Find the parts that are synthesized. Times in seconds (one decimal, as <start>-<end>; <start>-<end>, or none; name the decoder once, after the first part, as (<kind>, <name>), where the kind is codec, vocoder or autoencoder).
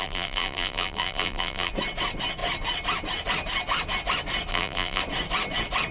0.0-1.7 (vocoder, BigVGAN v2); 4.5-5.0